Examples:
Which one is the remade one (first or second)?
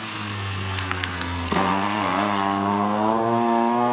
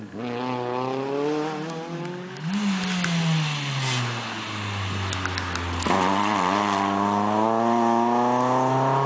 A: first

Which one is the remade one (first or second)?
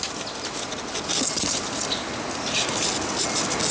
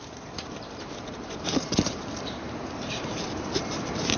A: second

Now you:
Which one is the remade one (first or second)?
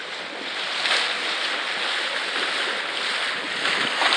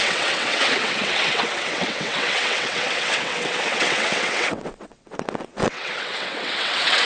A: second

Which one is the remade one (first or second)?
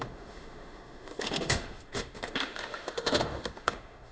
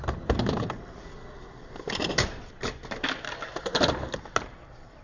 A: first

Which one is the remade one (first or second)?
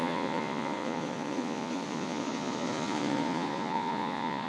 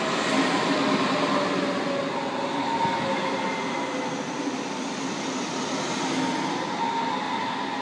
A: first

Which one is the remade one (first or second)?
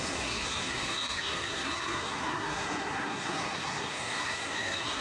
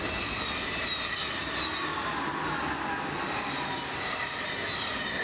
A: first